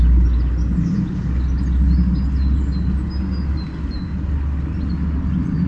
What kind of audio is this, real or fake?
real